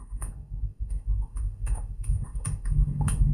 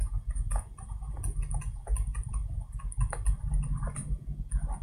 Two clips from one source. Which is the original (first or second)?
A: second